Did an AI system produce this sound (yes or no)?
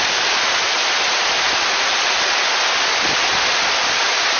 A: no